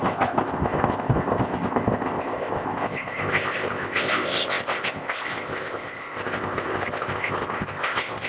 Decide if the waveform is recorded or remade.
remade